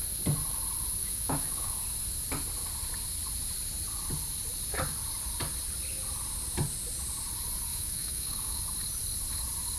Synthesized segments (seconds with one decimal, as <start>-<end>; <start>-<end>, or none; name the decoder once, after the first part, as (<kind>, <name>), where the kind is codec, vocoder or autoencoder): 1.0-1.7 (autoencoder, DAC-VAE); 7.7-8.6